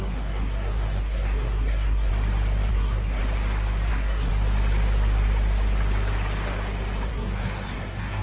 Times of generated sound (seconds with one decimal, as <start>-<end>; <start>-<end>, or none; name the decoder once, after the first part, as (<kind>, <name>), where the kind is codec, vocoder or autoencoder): 0.0-2.1 (codec, SNAC); 2.7-3.2; 3.9-4.3; 7.1-8.2